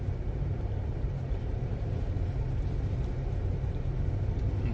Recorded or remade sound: remade